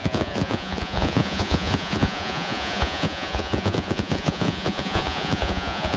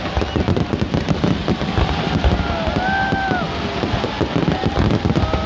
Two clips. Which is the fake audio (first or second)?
first